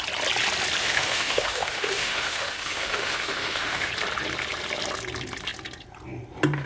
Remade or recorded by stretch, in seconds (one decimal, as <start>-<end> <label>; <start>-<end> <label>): 0.0-0.8 recorded; 0.8-3.9 remade; 3.9-6.7 recorded